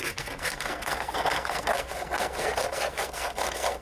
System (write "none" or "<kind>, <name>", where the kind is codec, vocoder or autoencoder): codec, SNAC